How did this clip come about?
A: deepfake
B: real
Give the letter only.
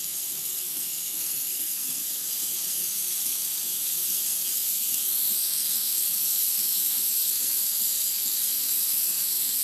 A